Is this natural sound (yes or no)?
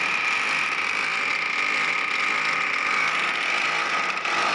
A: yes